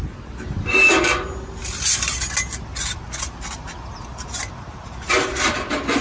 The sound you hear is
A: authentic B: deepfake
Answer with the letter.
A